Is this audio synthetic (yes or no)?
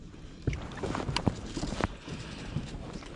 yes